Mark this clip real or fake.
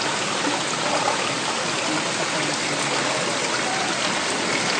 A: real